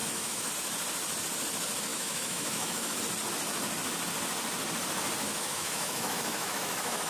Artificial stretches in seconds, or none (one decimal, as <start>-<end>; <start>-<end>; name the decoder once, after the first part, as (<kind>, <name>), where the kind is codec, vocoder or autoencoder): 0.0-0.5 (autoencoder, DAC-VAE); 1.9-3.0; 5.2-7.1